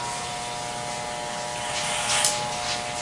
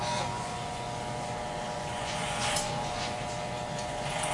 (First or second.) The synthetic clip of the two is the second